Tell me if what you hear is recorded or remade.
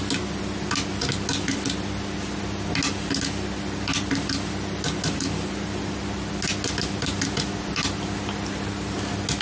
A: recorded